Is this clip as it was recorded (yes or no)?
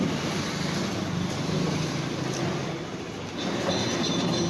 yes